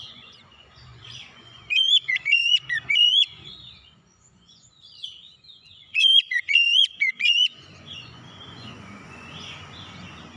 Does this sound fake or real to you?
fake